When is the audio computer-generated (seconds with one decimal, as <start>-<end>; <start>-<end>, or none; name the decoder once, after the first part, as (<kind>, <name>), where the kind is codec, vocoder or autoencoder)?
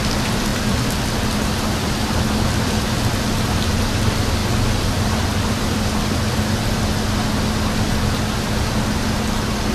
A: 0.5-1.3 (vocoder, BigVGAN v2)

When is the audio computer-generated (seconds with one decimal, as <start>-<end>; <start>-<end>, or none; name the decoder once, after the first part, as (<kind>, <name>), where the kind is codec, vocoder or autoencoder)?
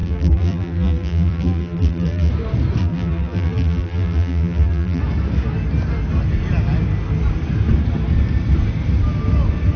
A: 0.0-2.3 (vocoder, BigVGAN v2); 2.8-5.0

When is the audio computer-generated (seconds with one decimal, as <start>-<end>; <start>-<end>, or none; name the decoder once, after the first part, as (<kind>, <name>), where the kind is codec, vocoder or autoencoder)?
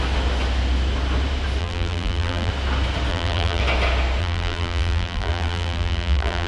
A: 1.6-2.5 (vocoder, BigVGAN v2); 3.1-3.6; 4.2-6.5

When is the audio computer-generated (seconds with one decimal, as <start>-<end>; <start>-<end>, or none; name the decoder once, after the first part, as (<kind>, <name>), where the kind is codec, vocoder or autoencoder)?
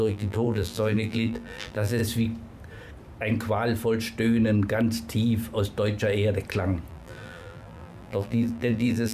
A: 0.0-2.0 (vocoder, BigVGAN v2); 6.9-9.1